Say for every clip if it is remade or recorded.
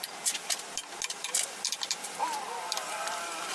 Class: recorded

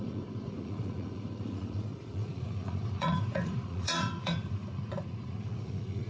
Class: remade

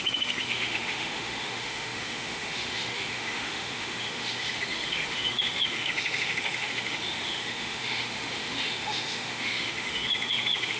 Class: remade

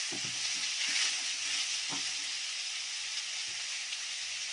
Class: remade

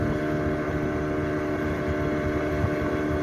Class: recorded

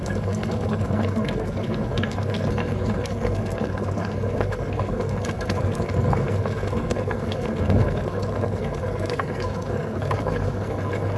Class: remade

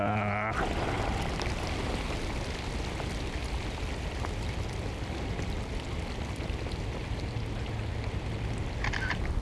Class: recorded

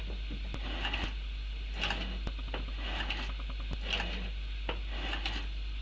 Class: recorded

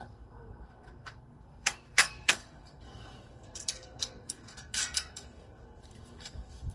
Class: remade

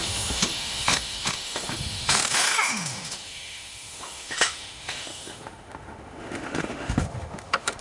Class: remade